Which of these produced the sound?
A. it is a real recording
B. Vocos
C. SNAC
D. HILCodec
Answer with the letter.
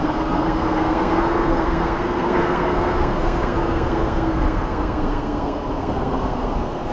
C